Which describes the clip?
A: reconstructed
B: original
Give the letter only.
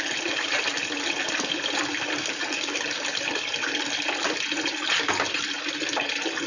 B